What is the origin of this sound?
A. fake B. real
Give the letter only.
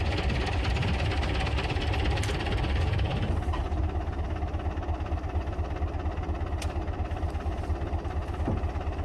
B